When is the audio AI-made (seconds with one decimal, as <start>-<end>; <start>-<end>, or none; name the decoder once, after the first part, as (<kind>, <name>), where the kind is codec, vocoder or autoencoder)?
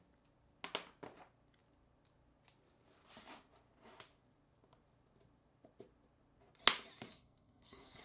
7.1-8.0 (codec, SNAC)